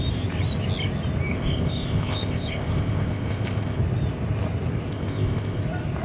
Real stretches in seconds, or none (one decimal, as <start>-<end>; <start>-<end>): 0.0-1.3; 3.8-4.9; 5.6-6.0